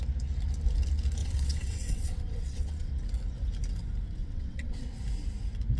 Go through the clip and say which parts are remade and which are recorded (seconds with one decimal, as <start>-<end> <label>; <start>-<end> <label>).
0.0-1.2 recorded; 1.2-2.9 remade; 2.9-4.2 recorded; 4.2-5.0 remade; 5.0-5.8 recorded